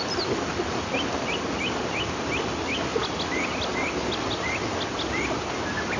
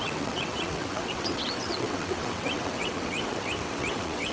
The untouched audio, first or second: first